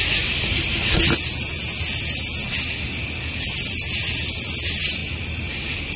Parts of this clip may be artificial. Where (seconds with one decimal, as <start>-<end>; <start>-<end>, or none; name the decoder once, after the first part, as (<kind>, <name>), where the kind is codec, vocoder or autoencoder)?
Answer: 5.0-5.5 (vocoder, BigVGAN v2)